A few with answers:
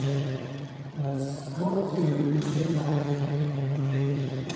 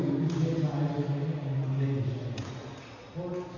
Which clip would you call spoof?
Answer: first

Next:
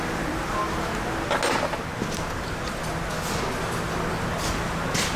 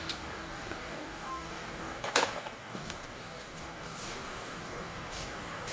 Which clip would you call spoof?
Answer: second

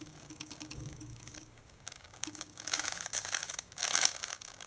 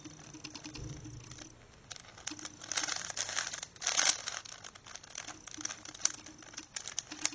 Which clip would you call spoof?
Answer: first